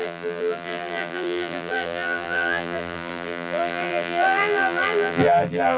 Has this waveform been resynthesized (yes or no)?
yes